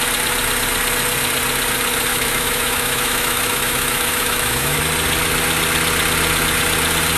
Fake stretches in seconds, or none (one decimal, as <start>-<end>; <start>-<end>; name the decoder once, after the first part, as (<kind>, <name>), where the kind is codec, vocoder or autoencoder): 2.1-4.8 (autoencoder, DAC-VAE)